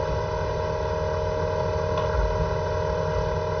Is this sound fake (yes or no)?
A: no